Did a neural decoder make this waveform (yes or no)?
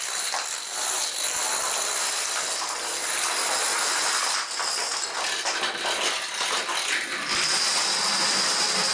no